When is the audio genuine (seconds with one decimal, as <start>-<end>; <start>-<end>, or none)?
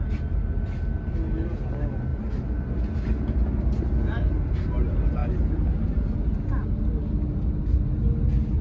0.0-8.6